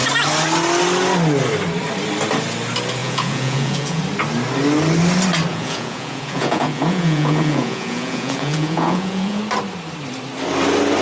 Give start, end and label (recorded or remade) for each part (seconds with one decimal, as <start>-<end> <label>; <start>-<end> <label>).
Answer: 0.0-3.0 recorded; 3.0-4.0 remade; 4.0-5.5 recorded; 5.5-9.4 remade; 9.4-11.0 recorded